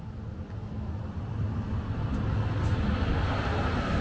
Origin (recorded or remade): recorded